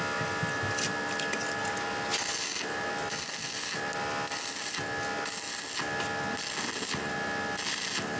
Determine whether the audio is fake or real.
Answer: real